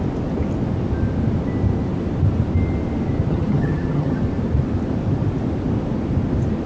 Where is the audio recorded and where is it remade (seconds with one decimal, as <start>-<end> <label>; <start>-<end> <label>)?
0.0-3.3 recorded; 3.3-4.2 remade; 4.2-6.7 recorded